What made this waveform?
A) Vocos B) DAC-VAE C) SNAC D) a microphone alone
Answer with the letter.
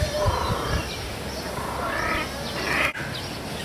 D